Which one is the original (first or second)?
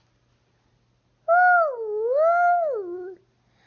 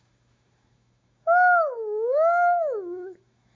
first